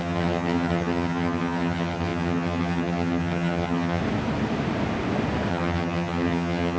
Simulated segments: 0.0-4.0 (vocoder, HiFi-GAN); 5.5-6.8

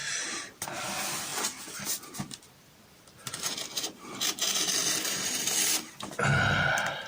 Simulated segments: 0.0-0.7 (vocoder, BigVGAN v2); 1.3-4.2; 4.8-6.2

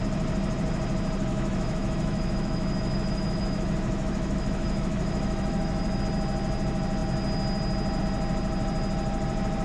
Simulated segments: 1.3-6.0 (autoencoder, DAC-VAE)

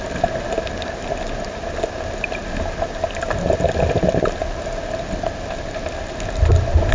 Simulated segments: none